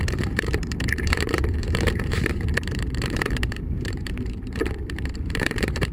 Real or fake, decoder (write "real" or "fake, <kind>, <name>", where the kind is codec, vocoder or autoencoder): fake, vocoder, BigVGAN v2